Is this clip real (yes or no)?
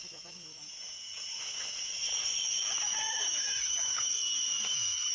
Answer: no